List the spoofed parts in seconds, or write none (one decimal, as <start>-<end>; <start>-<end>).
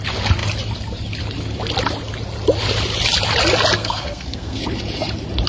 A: 3.8-4.6